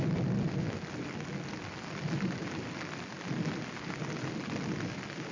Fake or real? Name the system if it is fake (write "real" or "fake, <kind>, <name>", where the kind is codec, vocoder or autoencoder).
real